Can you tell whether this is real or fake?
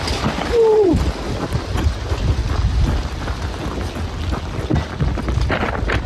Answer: real